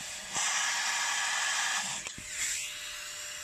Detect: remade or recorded recorded